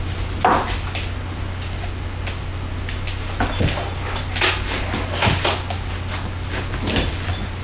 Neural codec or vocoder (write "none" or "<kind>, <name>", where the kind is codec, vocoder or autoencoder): none